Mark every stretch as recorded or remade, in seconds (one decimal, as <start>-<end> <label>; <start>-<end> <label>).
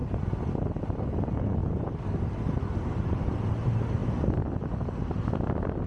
0.0-1.6 recorded; 1.6-2.2 remade; 2.2-5.9 recorded